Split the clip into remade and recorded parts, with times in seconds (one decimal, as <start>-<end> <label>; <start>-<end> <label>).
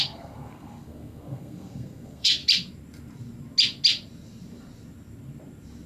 0.0-2.4 remade; 2.4-5.9 recorded